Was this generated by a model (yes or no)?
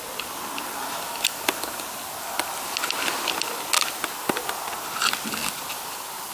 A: no